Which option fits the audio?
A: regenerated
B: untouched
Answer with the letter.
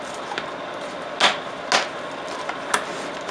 B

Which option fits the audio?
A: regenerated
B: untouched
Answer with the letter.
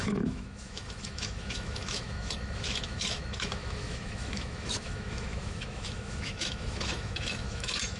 A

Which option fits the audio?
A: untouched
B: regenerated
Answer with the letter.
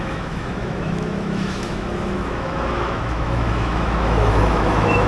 B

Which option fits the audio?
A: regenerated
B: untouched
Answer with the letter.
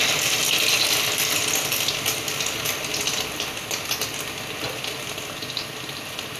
B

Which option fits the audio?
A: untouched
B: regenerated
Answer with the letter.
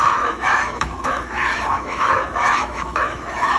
B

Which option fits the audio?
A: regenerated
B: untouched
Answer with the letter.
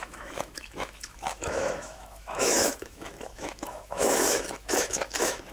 A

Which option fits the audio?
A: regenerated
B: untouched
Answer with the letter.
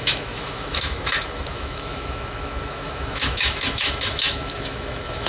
A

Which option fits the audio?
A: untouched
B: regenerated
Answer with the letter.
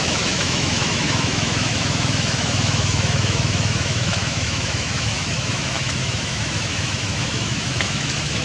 B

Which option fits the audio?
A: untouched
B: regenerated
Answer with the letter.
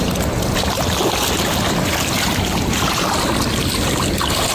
A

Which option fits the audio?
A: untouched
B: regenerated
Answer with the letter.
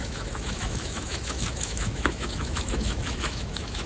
B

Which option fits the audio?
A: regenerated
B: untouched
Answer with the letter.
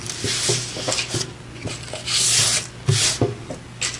B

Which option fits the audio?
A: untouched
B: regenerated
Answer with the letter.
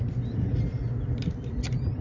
A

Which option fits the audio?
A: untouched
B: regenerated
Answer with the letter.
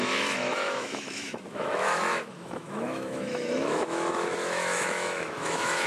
B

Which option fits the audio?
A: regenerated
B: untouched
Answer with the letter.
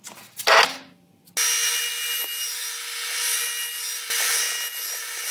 B